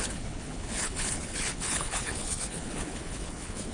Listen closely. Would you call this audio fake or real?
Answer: fake